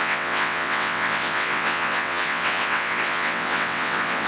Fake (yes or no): yes